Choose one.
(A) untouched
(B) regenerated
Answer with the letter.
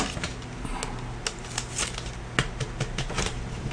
A